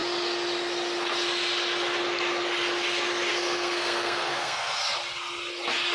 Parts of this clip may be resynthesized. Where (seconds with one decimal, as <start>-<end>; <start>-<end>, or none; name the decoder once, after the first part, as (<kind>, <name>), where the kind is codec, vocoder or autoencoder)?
3.3-4.8 (codec, SNAC)